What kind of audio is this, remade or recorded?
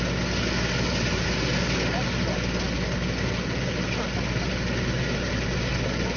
recorded